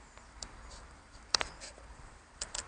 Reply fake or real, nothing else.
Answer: fake